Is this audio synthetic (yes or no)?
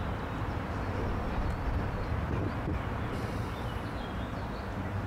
yes